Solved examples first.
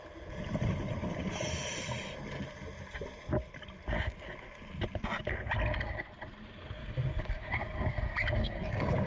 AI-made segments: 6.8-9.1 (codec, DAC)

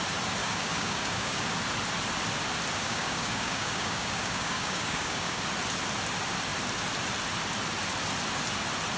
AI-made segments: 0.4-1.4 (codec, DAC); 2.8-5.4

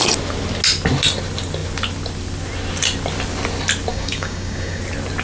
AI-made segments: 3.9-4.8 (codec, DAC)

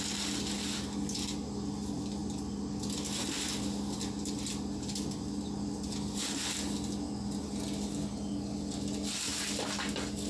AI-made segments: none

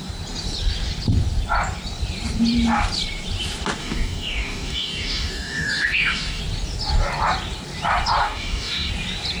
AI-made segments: 3.8-6.4 (codec, DAC); 8.2-8.9

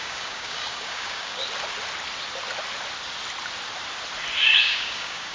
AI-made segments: 0.0-1.4 (codec, DAC); 4.6-5.3